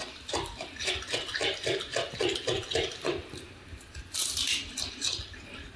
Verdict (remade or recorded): recorded